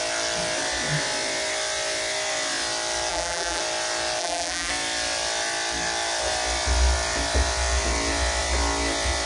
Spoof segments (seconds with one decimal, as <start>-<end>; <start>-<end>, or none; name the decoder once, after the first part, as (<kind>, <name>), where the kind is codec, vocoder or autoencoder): 3.1-3.6 (vocoder, BigVGAN v2); 4.2-4.7